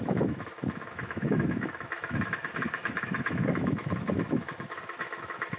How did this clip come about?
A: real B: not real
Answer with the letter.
B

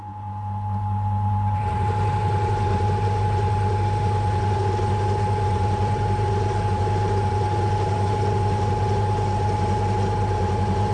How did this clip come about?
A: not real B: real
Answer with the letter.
B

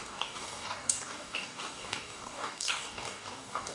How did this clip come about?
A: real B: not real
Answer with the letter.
B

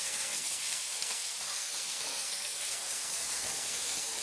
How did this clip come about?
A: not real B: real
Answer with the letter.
A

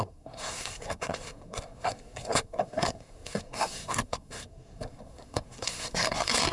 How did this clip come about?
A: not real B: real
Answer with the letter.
A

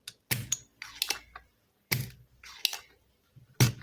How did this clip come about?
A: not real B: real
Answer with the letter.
B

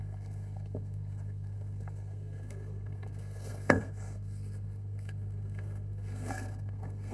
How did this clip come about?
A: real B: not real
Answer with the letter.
B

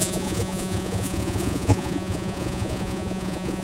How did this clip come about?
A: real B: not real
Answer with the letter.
B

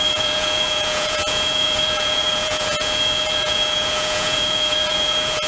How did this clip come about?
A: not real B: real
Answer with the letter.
A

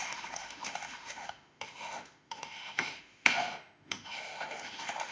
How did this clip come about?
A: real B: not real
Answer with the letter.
B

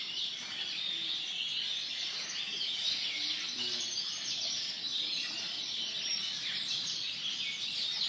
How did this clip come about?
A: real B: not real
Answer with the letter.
A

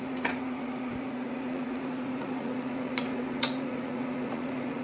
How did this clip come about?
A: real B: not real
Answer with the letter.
B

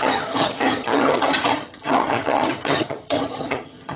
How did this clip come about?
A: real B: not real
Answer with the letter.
B